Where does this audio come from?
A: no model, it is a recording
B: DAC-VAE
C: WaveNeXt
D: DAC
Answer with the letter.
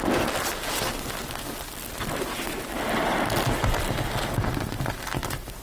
A